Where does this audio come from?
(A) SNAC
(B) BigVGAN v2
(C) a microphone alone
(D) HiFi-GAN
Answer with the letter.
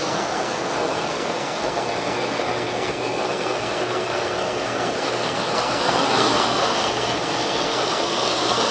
A